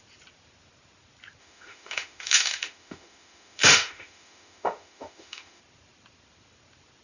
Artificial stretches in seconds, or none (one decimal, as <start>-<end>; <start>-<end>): 1.4-5.6